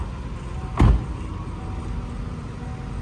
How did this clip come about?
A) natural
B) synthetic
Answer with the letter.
A